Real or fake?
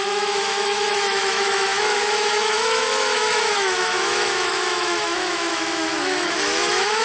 fake